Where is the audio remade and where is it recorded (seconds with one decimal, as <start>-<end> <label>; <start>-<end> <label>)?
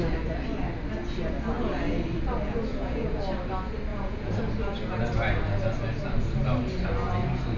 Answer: 0.0-2.7 recorded; 2.7-3.2 remade; 3.2-3.9 recorded; 3.9-4.4 remade; 4.4-7.6 recorded